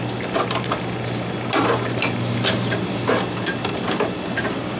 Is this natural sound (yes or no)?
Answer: yes